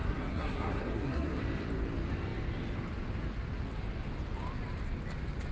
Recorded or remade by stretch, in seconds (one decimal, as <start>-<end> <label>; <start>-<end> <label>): 0.0-1.4 remade; 1.4-5.5 recorded